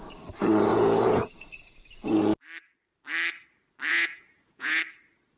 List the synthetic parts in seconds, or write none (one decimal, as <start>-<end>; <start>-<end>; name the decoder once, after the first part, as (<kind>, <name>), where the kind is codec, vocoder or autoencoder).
0.7-2.2 (vocoder, Vocos); 3.9-4.8